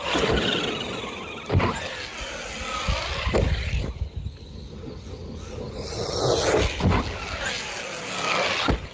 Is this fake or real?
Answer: real